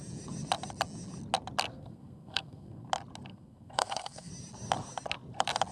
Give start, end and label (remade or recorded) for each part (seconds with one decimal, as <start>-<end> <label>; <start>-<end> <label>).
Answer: 0.0-1.7 recorded; 1.7-2.9 remade; 2.9-3.3 recorded; 3.3-4.3 remade; 4.3-5.7 recorded